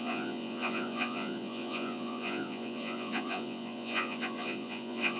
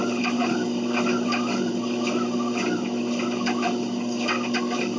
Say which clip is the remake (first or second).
first